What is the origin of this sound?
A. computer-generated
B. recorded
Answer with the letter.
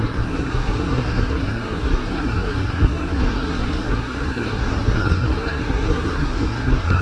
A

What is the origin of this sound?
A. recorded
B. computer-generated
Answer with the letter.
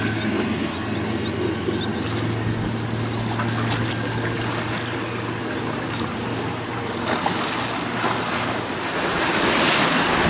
A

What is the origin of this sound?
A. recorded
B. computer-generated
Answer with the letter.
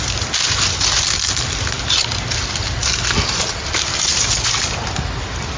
A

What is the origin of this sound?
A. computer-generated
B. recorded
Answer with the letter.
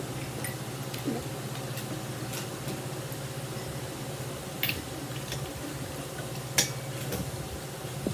B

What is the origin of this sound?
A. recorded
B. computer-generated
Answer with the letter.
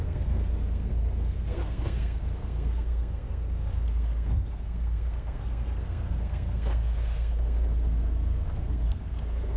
B